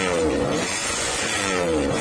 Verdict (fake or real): fake